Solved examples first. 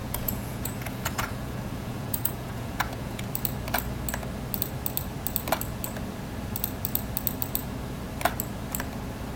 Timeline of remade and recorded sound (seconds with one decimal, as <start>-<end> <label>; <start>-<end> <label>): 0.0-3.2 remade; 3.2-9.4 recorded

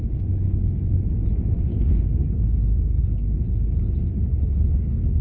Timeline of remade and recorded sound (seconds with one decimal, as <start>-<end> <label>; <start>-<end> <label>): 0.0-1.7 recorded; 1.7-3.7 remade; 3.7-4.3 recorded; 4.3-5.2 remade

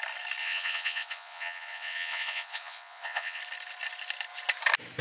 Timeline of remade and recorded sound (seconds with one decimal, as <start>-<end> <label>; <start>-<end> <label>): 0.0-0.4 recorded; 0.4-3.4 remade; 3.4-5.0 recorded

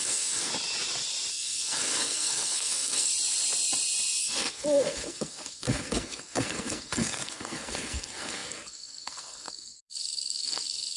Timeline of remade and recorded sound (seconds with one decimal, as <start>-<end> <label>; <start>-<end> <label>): 0.0-0.5 remade; 0.5-1.3 recorded; 1.3-3.1 remade; 3.1-4.2 recorded; 4.2-11.0 remade

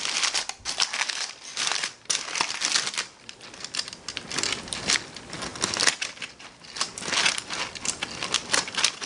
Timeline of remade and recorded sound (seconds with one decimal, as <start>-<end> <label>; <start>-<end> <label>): 0.0-9.1 recorded

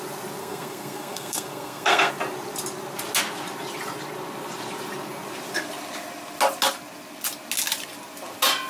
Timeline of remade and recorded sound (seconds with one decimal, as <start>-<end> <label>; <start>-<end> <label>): 0.0-0.4 recorded; 0.4-2.1 remade; 2.1-8.7 recorded